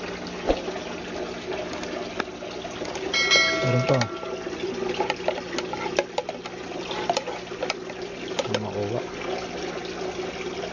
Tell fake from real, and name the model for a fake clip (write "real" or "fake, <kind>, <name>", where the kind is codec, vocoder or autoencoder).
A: real